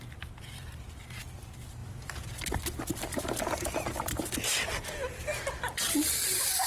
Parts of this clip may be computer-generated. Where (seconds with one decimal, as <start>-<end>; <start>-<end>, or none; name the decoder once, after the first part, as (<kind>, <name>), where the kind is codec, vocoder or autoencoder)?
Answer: 0.0-6.7 (vocoder, BigVGAN v2)